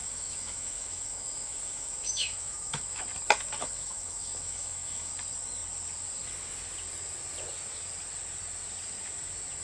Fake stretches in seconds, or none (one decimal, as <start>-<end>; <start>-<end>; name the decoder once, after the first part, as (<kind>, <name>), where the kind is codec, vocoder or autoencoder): 0.0-3.0 (autoencoder, DAC-VAE); 3.6-5.1